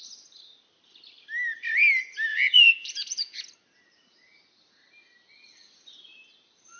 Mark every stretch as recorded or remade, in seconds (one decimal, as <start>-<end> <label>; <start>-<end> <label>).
0.0-2.3 recorded; 2.3-3.5 remade; 3.5-6.8 recorded